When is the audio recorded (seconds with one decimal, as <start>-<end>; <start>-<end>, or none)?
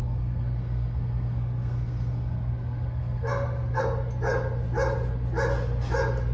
3.8-6.3